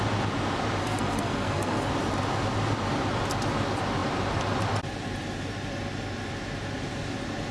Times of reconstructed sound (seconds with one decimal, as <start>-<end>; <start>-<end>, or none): 0.8-1.9